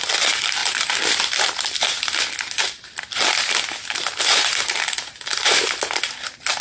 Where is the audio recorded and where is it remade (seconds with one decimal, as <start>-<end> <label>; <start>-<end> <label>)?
0.0-6.6 recorded